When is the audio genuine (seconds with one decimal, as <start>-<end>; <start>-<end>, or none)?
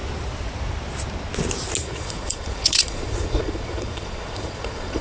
0.0-1.8